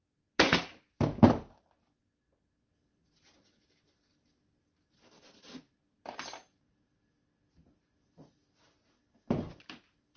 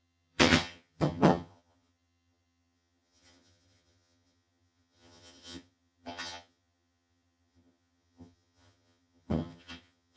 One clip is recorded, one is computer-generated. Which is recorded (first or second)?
first